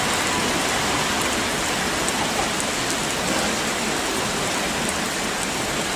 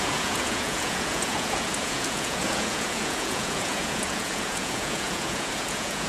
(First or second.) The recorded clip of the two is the first